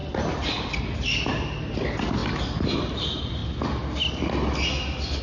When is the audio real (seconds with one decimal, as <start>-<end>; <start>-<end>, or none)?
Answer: 0.0-5.2